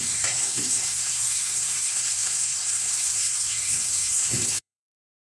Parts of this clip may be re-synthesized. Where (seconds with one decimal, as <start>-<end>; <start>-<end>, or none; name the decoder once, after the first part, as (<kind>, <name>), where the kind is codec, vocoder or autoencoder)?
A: 0.0-5.2 (codec, SNAC)